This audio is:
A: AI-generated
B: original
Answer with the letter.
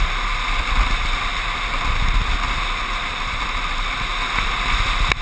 B